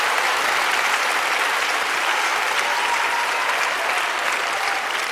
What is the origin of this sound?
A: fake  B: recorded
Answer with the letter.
B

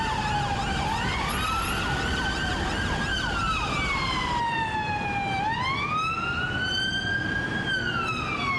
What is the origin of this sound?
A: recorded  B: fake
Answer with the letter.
A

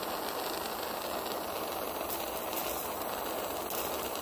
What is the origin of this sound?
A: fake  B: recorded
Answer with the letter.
B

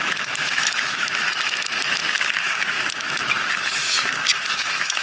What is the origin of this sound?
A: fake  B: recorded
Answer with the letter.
A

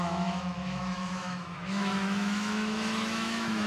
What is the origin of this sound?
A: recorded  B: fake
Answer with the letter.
B